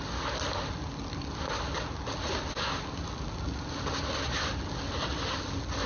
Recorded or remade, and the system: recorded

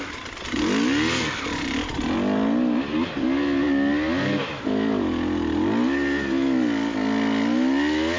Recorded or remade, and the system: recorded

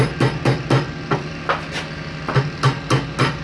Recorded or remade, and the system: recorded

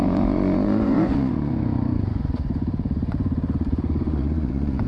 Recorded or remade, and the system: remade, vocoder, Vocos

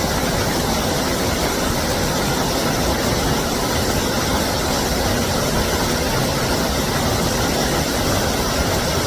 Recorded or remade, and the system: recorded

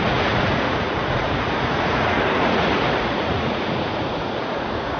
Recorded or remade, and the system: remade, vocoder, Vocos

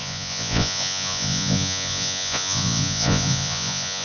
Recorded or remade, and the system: remade, vocoder, Vocos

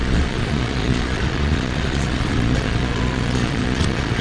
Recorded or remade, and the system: remade, vocoder, Vocos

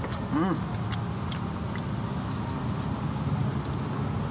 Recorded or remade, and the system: recorded